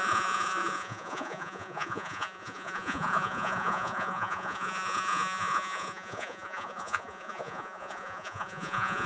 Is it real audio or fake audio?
fake